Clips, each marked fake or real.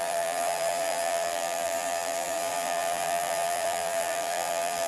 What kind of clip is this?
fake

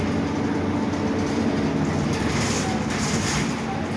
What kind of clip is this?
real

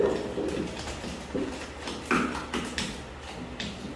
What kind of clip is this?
real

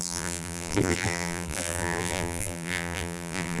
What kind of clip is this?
fake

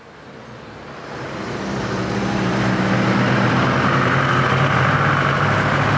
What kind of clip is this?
fake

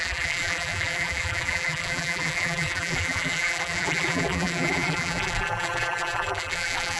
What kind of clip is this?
fake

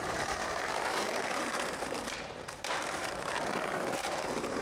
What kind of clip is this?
fake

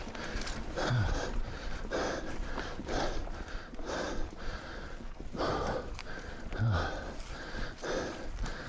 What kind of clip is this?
fake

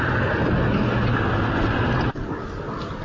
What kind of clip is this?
real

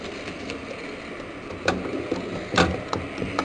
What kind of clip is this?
fake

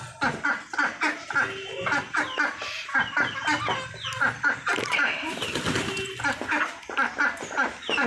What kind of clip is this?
real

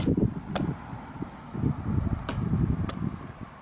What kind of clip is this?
real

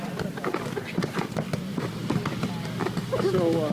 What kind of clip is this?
real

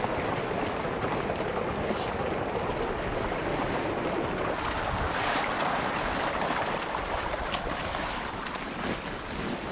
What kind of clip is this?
real